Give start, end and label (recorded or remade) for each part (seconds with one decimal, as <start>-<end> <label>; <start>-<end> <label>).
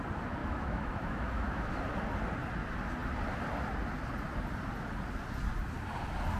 0.0-0.4 recorded; 0.4-1.7 remade; 1.7-6.4 recorded